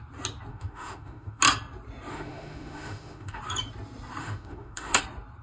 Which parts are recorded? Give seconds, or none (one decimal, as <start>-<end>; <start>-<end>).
0.0-0.5; 1.4-2.1; 3.4-4.2; 5.0-5.4